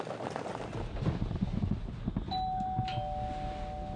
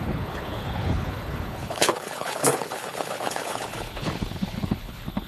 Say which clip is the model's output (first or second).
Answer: second